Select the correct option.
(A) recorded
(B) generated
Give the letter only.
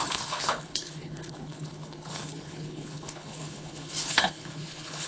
B